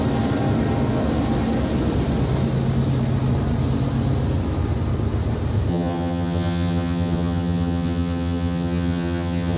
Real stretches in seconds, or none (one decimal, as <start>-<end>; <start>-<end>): 0.0-5.7